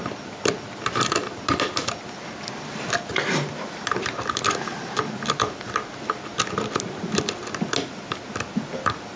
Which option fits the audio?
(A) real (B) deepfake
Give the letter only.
A